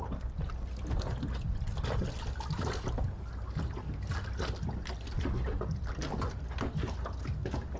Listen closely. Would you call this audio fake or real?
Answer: real